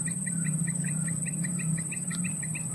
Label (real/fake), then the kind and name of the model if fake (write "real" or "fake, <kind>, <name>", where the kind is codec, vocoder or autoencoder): real